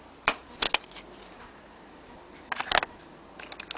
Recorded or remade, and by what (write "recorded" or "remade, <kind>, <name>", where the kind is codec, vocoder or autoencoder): recorded